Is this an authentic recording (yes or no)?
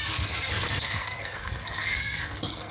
no